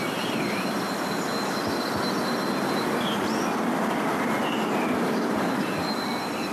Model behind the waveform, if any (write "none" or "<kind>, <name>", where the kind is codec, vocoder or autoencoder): none